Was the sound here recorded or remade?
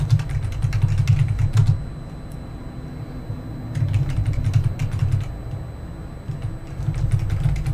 recorded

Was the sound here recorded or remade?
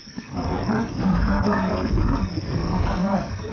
remade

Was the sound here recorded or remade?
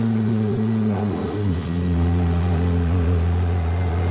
remade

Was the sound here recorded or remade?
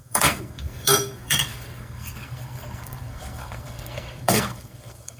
remade